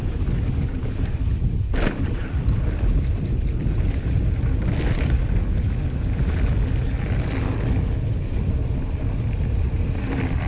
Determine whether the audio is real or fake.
real